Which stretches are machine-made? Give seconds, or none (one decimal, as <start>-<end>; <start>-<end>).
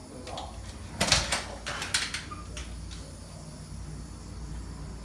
none